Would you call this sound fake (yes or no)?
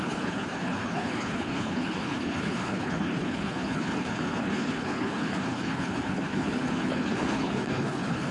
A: yes